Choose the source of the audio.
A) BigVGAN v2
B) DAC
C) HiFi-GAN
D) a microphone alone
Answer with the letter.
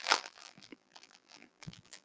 A